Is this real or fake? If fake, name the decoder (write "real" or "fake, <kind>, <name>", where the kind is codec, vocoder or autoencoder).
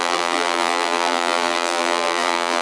fake, vocoder, BigVGAN v2